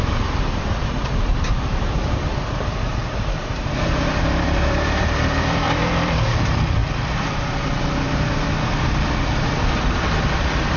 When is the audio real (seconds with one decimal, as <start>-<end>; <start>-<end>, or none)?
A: none